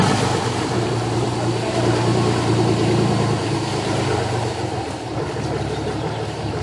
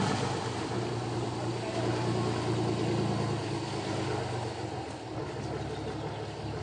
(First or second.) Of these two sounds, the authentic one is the second